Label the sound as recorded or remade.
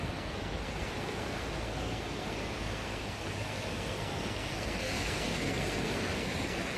remade